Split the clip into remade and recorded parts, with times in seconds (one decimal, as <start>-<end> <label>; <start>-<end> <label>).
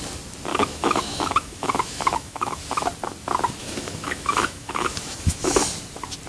0.0-0.5 recorded; 0.5-2.6 remade; 2.6-3.6 recorded; 3.6-5.6 remade; 5.6-6.3 recorded